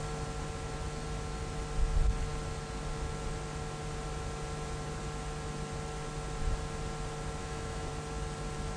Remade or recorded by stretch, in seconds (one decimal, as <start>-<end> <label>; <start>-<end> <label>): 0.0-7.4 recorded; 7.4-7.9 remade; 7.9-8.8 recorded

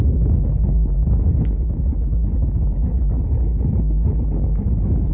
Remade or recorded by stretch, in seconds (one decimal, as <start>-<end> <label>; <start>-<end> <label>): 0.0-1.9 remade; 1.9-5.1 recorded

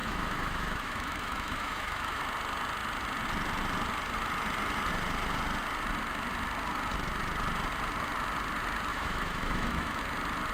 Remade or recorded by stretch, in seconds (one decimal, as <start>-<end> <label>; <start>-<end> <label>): 0.0-2.2 remade; 2.2-8.9 recorded; 8.9-10.0 remade; 10.0-10.5 recorded

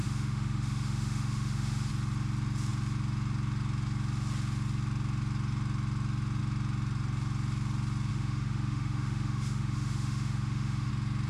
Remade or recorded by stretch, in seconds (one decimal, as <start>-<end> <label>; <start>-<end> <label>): 0.0-1.9 remade; 1.9-8.1 recorded; 8.1-10.9 remade; 10.9-11.3 recorded

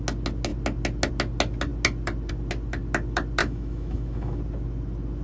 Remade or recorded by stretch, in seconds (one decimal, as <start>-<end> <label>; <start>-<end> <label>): 0.0-3.4 recorded; 3.4-4.4 remade; 4.4-5.2 recorded

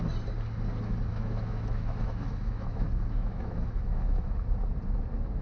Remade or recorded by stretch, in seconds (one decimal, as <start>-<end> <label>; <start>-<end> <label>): 0.0-1.1 recorded; 1.1-4.3 remade; 4.3-5.4 recorded